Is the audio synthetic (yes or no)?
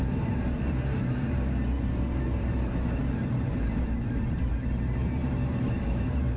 yes